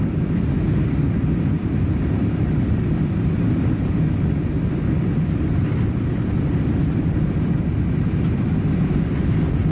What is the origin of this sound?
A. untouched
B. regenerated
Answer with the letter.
A